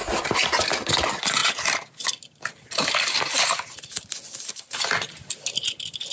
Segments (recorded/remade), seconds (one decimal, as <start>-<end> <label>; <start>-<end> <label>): 0.0-6.1 recorded

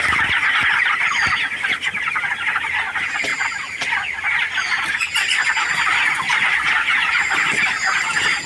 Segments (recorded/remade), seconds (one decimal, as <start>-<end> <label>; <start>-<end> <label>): 0.0-8.5 recorded

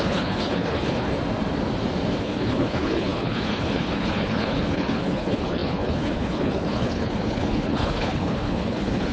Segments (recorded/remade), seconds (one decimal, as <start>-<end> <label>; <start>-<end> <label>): 0.0-1.1 remade; 1.1-2.2 recorded; 2.2-9.1 remade

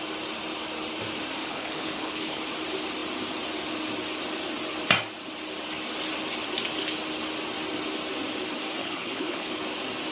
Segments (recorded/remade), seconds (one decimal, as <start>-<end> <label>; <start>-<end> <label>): 0.0-1.4 recorded; 1.4-2.4 remade; 2.4-8.8 recorded; 8.8-9.5 remade; 9.5-10.1 recorded

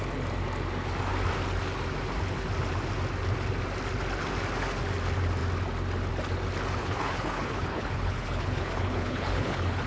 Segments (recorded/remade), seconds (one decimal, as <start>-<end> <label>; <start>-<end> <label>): 0.0-6.8 recorded; 6.8-9.9 remade